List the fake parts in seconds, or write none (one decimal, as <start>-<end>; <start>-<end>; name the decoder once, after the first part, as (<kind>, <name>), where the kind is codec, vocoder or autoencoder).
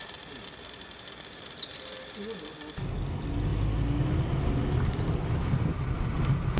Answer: none